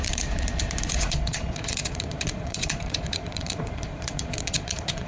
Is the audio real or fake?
fake